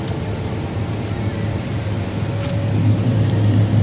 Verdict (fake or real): real